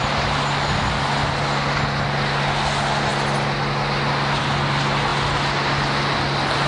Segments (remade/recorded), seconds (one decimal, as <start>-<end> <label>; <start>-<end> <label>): 0.0-6.7 recorded